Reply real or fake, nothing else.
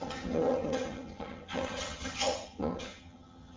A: fake